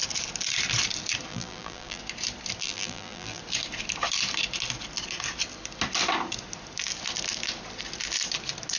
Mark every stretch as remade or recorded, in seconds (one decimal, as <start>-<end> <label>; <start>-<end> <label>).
0.0-1.3 recorded; 1.3-2.0 remade; 2.0-2.6 recorded; 2.6-3.4 remade; 3.4-8.8 recorded